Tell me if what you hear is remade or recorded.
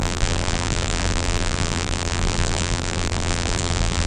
remade